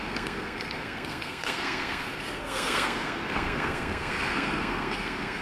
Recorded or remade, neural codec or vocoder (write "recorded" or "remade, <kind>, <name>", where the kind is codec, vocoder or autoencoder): remade, codec, SNAC